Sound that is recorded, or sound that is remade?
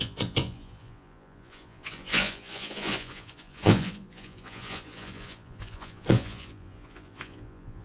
remade